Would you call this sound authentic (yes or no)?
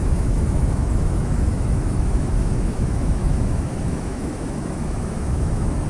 no